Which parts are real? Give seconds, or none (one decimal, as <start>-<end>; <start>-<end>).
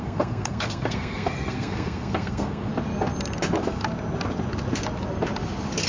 2.7-5.9